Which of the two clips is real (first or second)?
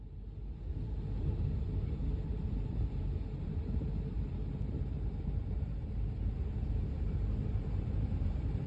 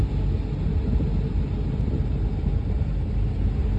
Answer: second